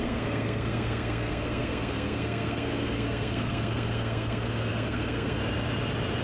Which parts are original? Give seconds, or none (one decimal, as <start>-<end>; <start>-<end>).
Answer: 5.4-6.2